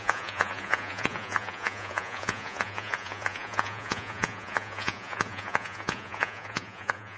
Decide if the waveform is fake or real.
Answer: fake